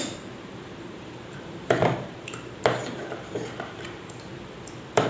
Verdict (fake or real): fake